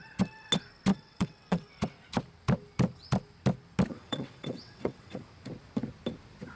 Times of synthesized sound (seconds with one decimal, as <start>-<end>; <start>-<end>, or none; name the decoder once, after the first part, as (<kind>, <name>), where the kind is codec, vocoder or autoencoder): 0.9-1.7 (vocoder, WaveNeXt); 3.9-5.2

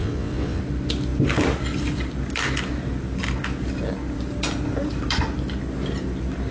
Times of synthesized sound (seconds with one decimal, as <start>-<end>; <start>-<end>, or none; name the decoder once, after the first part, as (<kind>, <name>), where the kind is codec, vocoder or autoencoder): 0.0-0.6 (vocoder, WaveNeXt)

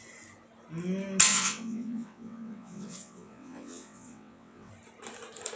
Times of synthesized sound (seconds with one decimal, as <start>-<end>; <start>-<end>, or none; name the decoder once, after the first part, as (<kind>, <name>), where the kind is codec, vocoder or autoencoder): 1.3-4.7 (vocoder, WaveNeXt)

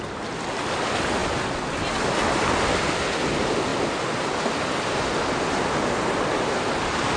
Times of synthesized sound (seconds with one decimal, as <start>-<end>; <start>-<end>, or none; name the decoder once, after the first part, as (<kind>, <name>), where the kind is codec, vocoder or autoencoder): none

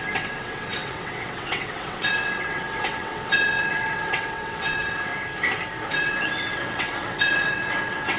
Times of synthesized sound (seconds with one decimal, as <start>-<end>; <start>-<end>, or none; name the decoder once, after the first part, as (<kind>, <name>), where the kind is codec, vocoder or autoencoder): 0.0-5.1 (vocoder, WaveNeXt); 5.9-8.2

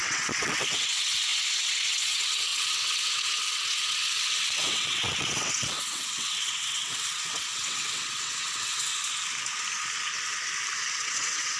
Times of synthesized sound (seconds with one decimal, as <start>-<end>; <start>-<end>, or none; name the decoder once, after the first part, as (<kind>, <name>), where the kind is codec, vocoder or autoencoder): 0.0-8.9 (vocoder, WaveNeXt); 10.9-11.6

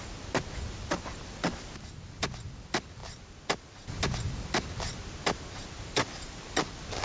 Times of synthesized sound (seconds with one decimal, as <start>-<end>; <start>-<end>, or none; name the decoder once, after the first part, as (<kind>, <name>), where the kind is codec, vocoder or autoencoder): none

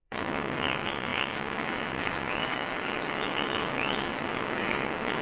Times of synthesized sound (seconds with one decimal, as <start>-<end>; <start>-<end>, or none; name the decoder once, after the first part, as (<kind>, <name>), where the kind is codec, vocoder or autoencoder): 0.0-5.2 (vocoder, WaveNeXt)